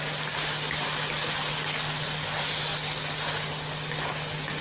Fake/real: real